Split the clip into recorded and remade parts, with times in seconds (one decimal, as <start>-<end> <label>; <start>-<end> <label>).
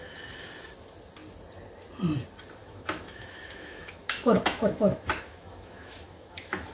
0.0-2.6 recorded; 2.6-6.7 remade